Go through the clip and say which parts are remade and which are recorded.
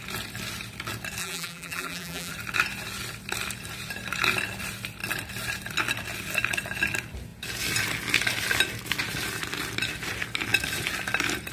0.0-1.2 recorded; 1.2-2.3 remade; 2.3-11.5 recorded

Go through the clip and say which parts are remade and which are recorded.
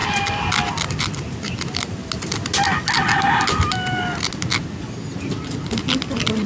0.0-0.5 remade; 0.5-6.5 recorded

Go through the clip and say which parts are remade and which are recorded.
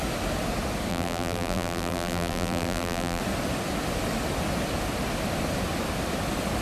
0.0-0.9 recorded; 0.9-3.2 remade; 3.2-6.6 recorded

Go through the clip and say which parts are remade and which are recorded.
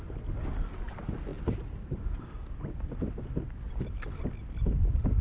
0.0-5.2 recorded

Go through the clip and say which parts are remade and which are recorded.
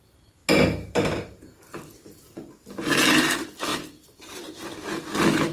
0.0-3.7 recorded; 3.7-4.4 remade; 4.4-5.5 recorded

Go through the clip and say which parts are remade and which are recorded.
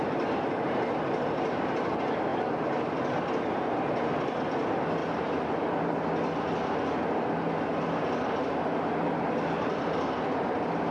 0.0-2.3 recorded; 2.3-3.3 remade; 3.3-5.0 recorded; 5.0-6.0 remade; 6.0-10.9 recorded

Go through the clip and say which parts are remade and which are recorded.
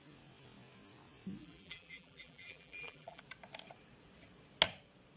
0.0-1.4 recorded; 1.4-3.2 remade; 3.2-5.2 recorded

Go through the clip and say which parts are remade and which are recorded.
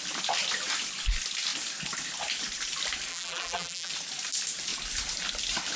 0.0-3.1 recorded; 3.1-3.9 remade; 3.9-5.8 recorded